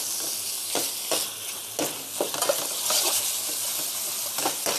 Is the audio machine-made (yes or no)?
no